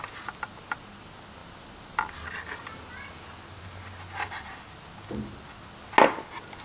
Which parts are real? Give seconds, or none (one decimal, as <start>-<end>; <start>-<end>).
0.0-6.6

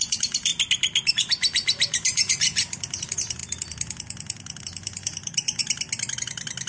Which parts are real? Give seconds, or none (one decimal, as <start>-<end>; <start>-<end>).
0.5-1.1; 5.6-6.7

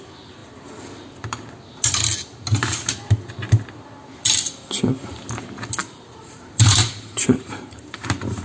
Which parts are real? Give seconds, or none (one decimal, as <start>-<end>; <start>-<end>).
0.0-5.8